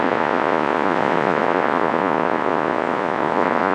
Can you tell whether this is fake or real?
fake